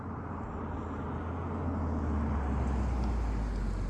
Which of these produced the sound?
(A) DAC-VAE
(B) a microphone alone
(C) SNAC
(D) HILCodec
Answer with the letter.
B